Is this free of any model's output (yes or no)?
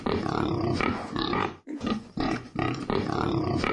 no